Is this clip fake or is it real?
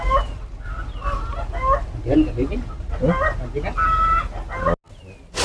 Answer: real